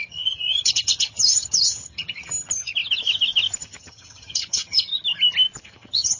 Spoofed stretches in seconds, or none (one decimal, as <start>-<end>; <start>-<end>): 0.0-2.7; 3.6-4.9; 5.6-6.2